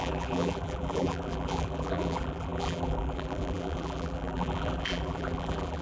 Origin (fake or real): fake